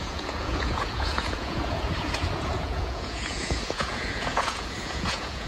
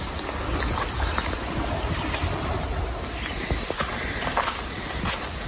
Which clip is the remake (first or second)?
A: first